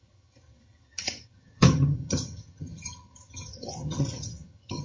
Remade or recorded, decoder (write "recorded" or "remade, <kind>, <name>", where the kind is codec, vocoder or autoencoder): remade, vocoder, HiFi-GAN